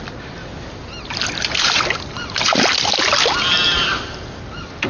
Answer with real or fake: real